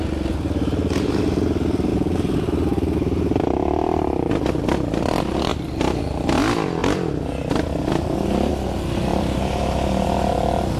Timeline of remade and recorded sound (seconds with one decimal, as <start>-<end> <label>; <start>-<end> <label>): 0.0-1.9 recorded; 1.9-4.4 remade; 4.4-9.1 recorded; 9.1-10.3 remade; 10.3-10.8 recorded